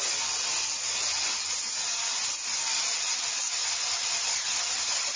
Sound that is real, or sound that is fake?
real